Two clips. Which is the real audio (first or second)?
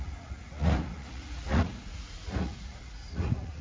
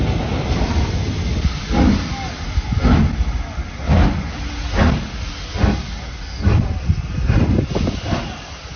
second